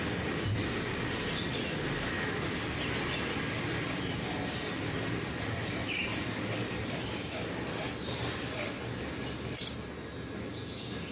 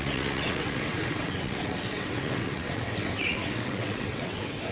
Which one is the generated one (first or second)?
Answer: second